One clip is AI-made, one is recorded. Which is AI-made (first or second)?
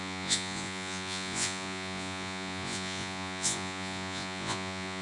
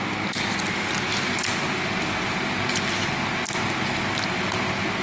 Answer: first